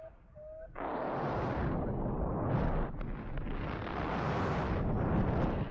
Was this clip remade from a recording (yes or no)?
no